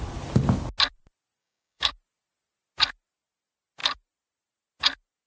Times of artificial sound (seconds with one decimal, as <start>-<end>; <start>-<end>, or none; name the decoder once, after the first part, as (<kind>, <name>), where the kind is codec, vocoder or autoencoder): 1.4-1.9 (codec, DAC)